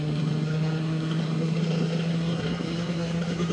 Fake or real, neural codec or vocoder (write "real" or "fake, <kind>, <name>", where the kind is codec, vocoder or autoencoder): fake, codec, SNAC